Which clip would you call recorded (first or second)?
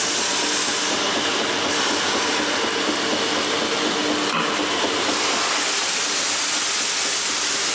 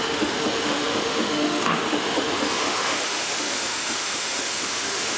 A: first